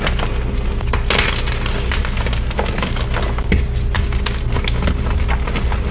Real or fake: real